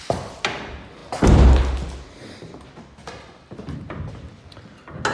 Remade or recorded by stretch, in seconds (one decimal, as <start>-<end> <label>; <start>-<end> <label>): 0.0-5.1 recorded